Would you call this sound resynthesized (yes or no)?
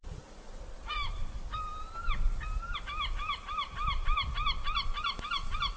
yes